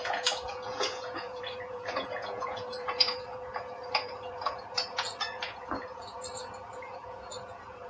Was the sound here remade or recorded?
remade